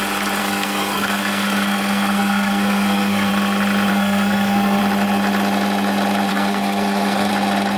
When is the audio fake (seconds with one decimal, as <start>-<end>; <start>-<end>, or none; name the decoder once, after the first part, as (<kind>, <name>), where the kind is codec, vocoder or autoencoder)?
0.4-3.3 (codec, SNAC); 3.9-4.8; 6.3-7.3